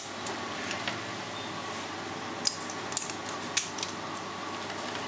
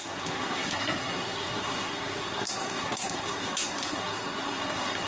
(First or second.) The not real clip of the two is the second